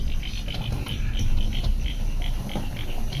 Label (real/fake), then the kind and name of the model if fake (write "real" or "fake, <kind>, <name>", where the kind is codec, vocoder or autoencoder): real